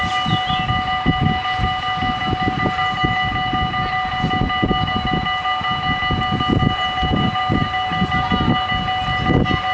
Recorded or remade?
recorded